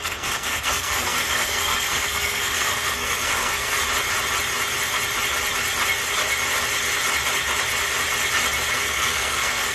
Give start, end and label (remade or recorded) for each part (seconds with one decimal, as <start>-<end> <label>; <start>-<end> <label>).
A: 0.0-3.8 remade; 3.8-8.7 recorded; 8.7-9.7 remade